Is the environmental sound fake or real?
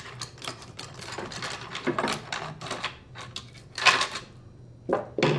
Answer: real